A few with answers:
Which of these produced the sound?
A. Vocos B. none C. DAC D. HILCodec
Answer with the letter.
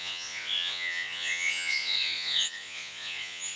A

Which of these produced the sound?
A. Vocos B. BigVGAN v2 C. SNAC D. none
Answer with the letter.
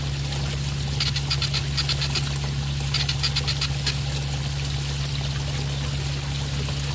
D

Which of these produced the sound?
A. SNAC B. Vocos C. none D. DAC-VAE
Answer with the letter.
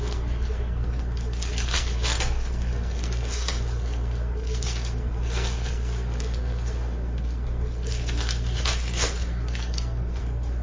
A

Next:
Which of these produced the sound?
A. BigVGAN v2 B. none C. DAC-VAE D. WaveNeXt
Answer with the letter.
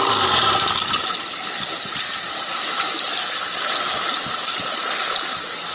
B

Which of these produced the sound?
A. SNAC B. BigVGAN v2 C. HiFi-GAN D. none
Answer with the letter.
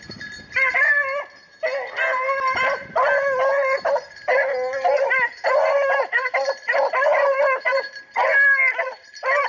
D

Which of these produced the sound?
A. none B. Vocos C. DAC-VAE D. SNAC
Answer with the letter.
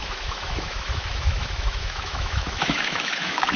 C